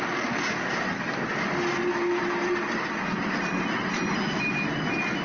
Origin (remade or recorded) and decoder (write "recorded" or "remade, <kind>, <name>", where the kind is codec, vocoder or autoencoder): recorded